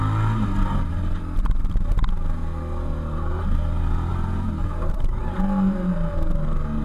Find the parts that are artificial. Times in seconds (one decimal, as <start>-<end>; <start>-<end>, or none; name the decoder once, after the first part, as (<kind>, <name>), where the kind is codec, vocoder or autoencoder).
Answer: 4.1-5.2 (vocoder, BigVGAN v2)